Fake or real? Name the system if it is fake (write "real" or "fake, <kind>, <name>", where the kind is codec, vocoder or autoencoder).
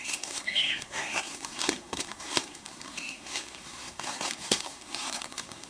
fake, codec, SNAC